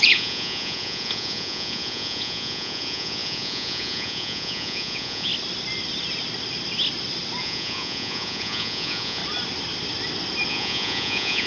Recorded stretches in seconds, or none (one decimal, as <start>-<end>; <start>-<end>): 5.3-7.4; 9.2-10.5